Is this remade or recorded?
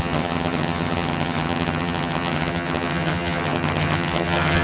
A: remade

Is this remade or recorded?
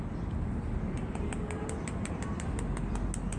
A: recorded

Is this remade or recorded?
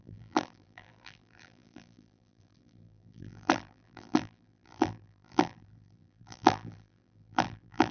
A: remade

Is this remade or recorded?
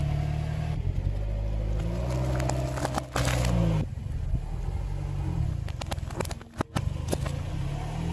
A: recorded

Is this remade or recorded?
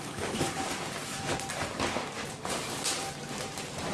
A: recorded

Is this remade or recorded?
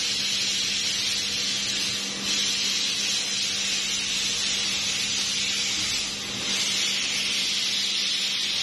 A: recorded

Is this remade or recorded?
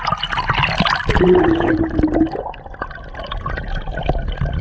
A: recorded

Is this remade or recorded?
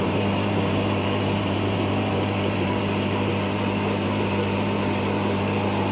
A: remade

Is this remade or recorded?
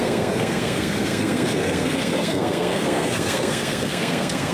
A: remade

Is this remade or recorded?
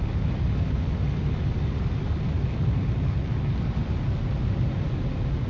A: recorded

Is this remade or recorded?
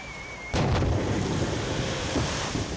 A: remade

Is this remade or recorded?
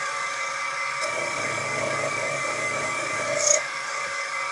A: remade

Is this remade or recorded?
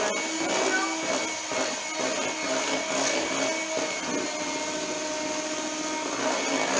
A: recorded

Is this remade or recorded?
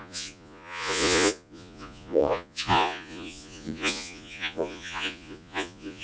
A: remade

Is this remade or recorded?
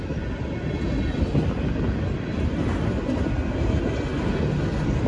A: recorded